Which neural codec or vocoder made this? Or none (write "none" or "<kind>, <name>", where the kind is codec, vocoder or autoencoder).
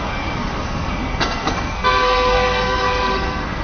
codec, SNAC